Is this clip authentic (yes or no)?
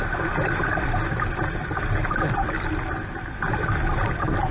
yes